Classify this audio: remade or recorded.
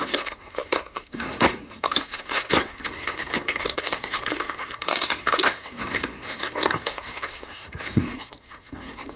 remade